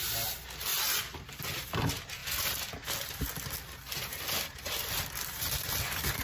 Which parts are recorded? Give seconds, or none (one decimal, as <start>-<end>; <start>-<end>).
0.0-6.2